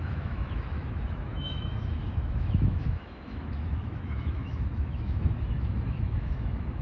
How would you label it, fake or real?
fake